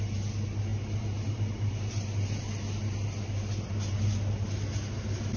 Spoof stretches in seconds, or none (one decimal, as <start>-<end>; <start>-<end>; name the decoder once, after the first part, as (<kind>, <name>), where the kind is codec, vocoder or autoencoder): none